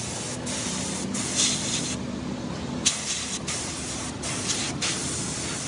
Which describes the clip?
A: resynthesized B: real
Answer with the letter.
B